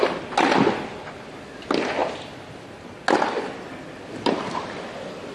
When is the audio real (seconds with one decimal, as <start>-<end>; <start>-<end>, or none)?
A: 0.0-5.3